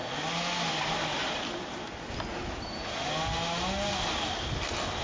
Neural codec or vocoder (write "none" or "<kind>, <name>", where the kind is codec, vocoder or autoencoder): none